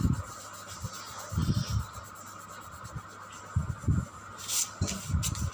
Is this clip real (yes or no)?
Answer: yes